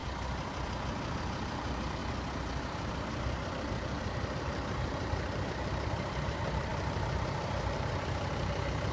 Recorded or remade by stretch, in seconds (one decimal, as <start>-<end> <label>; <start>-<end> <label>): 0.0-1.2 recorded; 1.2-2.0 remade; 2.0-3.7 recorded; 3.7-8.9 remade